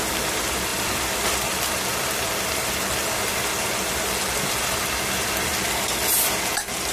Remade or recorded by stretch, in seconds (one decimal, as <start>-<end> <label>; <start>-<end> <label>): 0.0-6.9 recorded